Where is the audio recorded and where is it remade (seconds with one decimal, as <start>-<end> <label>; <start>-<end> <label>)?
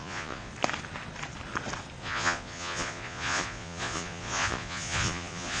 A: 0.0-0.5 remade; 0.5-2.0 recorded; 2.0-5.6 remade